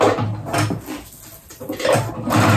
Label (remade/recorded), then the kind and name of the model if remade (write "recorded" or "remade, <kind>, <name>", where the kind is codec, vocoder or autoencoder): recorded